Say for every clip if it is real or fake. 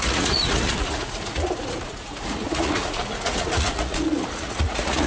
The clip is fake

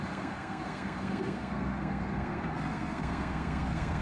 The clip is fake